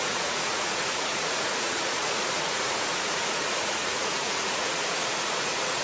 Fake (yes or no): yes